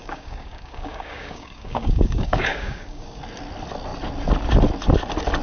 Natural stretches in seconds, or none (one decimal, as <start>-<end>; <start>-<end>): 3.2-5.4